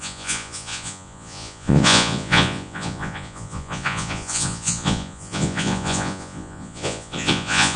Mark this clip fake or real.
fake